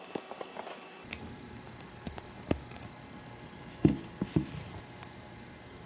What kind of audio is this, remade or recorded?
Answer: recorded